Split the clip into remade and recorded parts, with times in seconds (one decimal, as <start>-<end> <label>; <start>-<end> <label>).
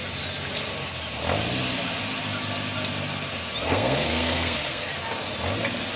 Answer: 0.0-3.6 recorded; 3.6-4.9 remade; 4.9-6.0 recorded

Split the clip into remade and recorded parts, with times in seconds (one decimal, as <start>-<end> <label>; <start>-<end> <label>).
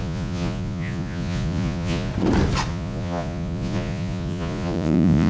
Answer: 0.0-2.1 remade; 2.1-2.7 recorded; 2.7-5.3 remade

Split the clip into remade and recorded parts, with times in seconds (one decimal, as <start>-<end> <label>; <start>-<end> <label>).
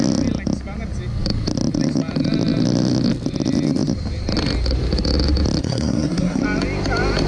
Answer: 0.0-5.6 recorded; 5.6-6.4 remade; 6.4-7.3 recorded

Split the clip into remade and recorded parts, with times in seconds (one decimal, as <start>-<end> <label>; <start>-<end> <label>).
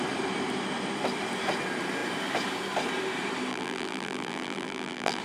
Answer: 0.0-3.5 recorded; 3.5-5.2 remade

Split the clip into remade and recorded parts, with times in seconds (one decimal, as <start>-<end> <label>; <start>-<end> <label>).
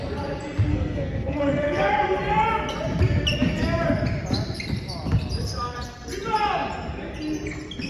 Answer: 0.0-0.7 recorded; 0.7-1.8 remade; 1.8-7.9 recorded